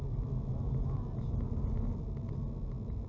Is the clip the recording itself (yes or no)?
yes